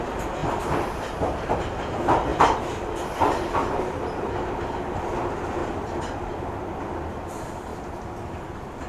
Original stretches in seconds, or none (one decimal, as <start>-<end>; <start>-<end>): 0.0-8.9